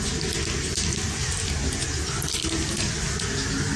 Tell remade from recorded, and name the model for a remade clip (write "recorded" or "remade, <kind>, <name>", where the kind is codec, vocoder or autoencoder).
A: recorded